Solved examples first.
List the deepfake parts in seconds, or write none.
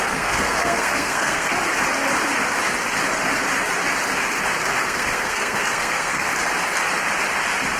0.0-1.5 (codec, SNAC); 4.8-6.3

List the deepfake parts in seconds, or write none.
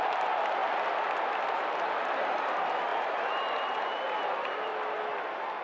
0.0-0.6 (vocoder, BigVGAN v2); 1.5-4.7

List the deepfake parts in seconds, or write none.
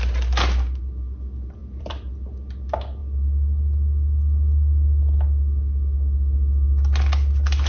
1.6-2.2 (vocoder, BigVGAN v2)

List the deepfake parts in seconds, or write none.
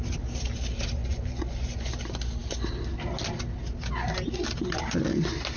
1.0-1.9 (vocoder, Vocos)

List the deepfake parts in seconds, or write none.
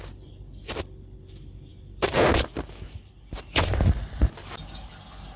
none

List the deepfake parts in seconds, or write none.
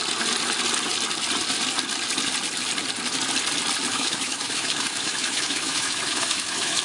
3.9-6.8 (autoencoder, DAC-VAE)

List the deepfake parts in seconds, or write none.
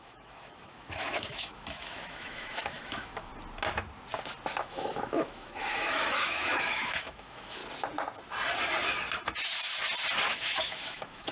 0.0-3.3 (autoencoder, DAC-VAE); 4.6-7.6; 10.3-11.3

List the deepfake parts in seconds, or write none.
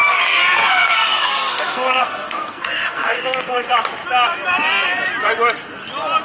0.0-3.7 (codec, SNAC)